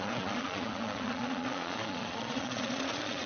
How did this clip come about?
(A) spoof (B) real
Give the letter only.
A